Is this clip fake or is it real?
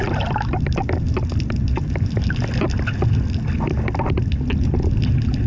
real